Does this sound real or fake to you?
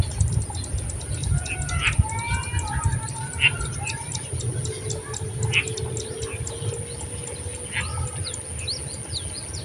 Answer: real